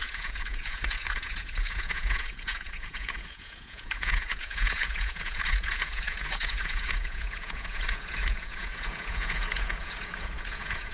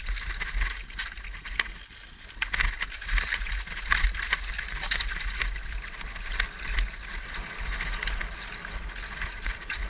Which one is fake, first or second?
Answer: first